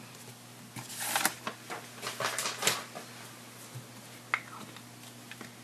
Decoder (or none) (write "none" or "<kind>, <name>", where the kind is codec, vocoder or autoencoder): none